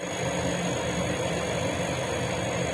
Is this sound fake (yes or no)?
no